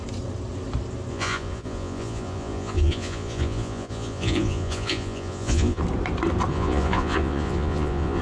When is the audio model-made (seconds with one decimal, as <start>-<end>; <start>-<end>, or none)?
1.1-5.8; 6.5-8.2